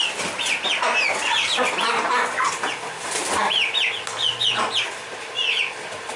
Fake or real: real